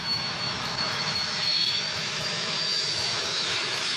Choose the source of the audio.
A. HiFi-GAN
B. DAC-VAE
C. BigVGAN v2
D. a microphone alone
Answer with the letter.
B